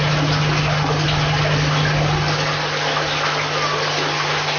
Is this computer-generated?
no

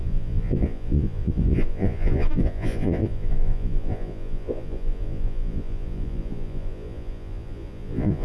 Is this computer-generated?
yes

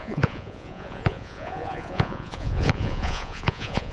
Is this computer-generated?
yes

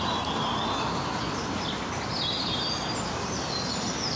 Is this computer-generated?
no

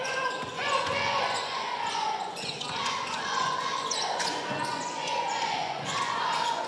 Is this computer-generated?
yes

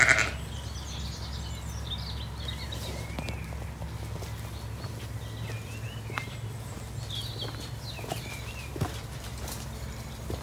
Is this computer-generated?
no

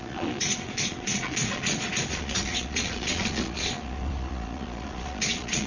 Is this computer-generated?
yes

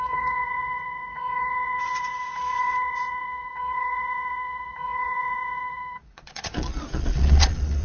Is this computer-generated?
yes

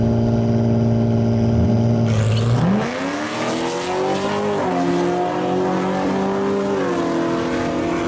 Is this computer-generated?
no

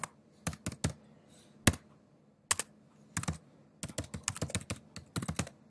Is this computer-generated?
no